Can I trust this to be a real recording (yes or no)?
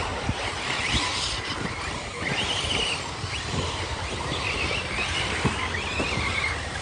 yes